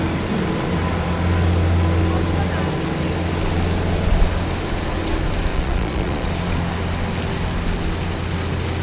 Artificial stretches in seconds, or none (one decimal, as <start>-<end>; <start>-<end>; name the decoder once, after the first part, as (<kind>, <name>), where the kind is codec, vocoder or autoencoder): 5.5-6.3 (vocoder, Vocos)